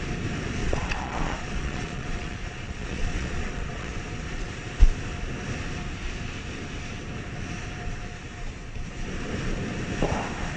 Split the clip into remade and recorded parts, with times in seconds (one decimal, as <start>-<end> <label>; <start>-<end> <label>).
0.0-0.6 recorded; 0.6-3.9 remade; 3.9-10.6 recorded